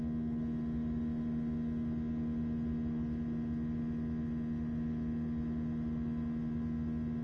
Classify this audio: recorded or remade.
recorded